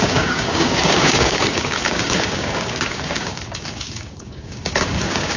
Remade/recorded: remade